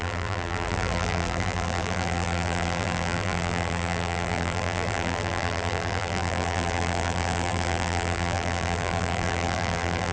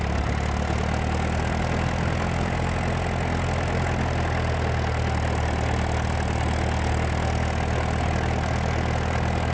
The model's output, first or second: first